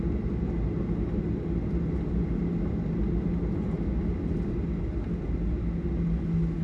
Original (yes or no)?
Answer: yes